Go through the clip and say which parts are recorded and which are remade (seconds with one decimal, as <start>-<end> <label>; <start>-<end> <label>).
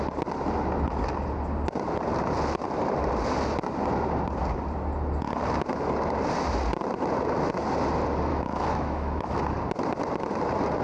0.0-8.3 recorded; 8.3-9.4 remade; 9.4-10.8 recorded